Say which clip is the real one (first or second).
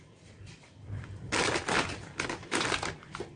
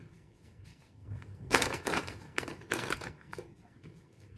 first